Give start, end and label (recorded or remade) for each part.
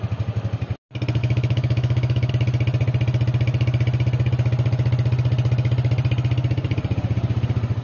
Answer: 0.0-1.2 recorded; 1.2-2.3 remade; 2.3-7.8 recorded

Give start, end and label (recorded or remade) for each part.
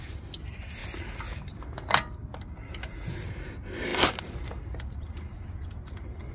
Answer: 0.0-6.3 recorded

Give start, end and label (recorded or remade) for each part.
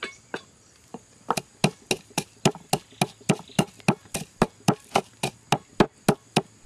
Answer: 0.0-6.7 recorded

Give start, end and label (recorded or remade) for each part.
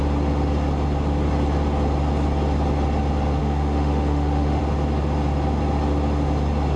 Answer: 0.0-3.4 recorded; 3.4-4.6 remade; 4.6-6.8 recorded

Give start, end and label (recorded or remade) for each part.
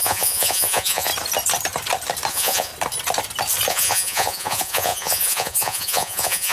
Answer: 0.0-1.1 remade; 1.1-2.3 recorded; 2.3-2.7 remade; 2.7-3.7 recorded; 3.7-6.5 remade